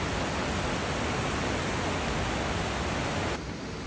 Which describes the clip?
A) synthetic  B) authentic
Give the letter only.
B